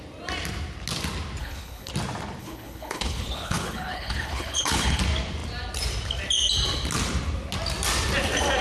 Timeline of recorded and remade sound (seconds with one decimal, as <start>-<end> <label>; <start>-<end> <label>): 0.0-1.4 recorded; 1.4-1.9 remade; 1.9-2.4 recorded; 2.4-5.0 remade; 5.0-8.6 recorded